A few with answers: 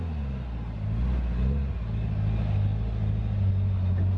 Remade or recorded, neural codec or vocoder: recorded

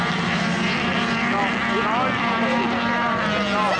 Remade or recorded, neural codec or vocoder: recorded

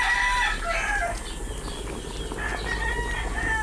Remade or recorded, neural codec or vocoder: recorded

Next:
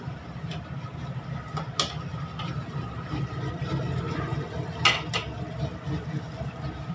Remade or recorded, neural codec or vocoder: recorded